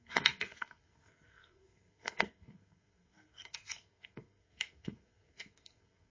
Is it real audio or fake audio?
fake